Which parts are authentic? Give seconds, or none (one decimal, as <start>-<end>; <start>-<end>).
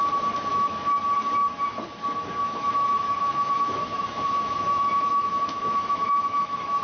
0.0-0.5; 1.0-2.4